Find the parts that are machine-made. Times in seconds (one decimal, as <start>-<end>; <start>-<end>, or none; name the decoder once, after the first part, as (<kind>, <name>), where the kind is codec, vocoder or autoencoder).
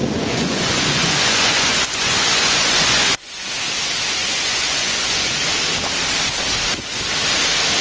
0.0-3.5 (vocoder, Vocos); 4.2-5.5